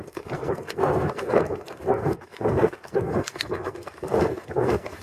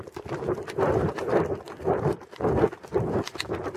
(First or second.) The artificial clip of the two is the first